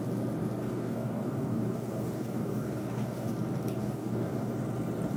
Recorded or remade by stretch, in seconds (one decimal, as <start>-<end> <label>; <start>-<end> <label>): 0.0-0.6 recorded; 0.6-3.3 remade; 3.3-3.8 recorded; 3.8-4.5 remade; 4.5-5.2 recorded